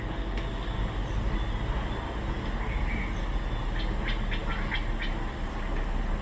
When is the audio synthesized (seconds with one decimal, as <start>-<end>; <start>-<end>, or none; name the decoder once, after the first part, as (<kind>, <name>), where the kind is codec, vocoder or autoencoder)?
none